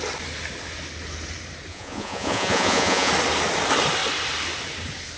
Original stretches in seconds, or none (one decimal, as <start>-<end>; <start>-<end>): 0.0-1.7; 3.1-5.2